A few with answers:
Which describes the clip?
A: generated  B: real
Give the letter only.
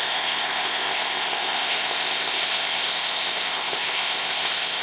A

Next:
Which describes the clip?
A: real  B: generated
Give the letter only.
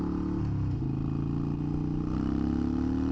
A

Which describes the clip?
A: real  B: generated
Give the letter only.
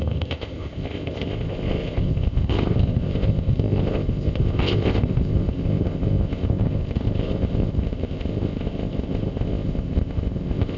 B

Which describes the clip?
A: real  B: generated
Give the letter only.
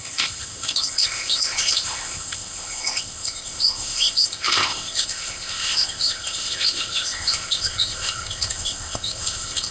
B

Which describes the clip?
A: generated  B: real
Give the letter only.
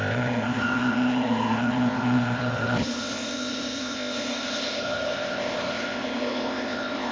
A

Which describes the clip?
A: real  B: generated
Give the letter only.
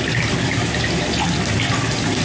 A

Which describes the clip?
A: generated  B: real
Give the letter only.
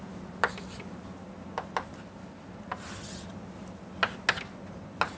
B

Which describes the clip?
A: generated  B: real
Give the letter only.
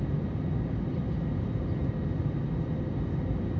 B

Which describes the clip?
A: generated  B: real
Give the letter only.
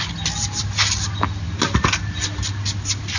B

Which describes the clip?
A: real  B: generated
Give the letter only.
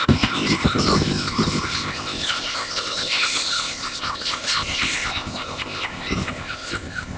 B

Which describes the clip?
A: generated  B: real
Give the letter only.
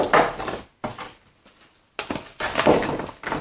B